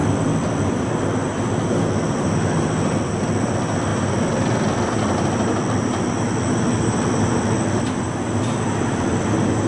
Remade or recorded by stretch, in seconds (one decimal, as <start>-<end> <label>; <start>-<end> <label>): 0.0-9.7 recorded